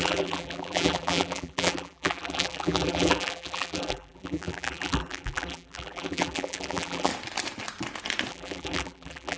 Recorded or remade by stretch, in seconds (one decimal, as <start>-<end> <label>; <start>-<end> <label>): 0.0-7.1 remade; 7.1-8.3 recorded; 8.3-9.4 remade